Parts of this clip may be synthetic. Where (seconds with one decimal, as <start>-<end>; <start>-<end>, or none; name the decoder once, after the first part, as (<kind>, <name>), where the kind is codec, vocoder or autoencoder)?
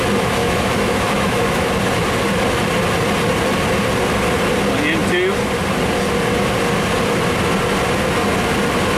0.4-1.7 (autoencoder, DAC-VAE)